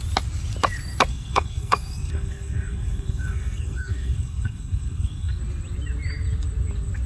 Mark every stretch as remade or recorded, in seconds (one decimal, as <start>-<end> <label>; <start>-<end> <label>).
0.0-1.1 recorded; 1.1-5.4 remade; 5.4-7.1 recorded